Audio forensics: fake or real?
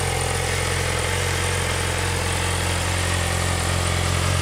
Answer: real